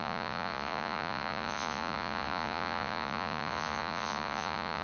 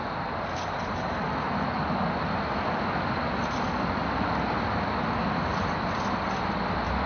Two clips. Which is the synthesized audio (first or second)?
first